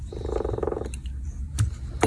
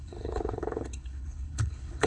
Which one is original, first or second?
first